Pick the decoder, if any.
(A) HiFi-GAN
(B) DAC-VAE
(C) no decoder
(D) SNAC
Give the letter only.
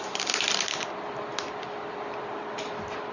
C